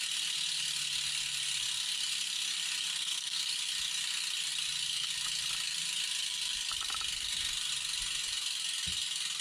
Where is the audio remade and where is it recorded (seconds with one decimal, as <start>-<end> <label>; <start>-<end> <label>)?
0.0-2.9 recorded; 2.9-3.5 remade; 3.5-9.4 recorded